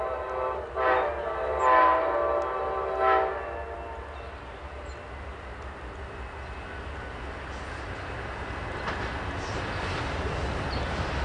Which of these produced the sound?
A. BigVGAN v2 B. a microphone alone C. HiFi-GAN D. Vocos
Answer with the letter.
B